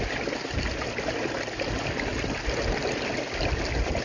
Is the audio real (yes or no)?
yes